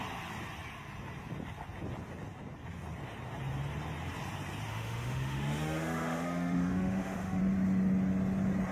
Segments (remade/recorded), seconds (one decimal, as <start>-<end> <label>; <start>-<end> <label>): 0.0-4.7 recorded; 4.7-7.4 remade; 7.4-8.7 recorded